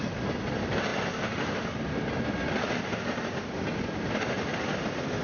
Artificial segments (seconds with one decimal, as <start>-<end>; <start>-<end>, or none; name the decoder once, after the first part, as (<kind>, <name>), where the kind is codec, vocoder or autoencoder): none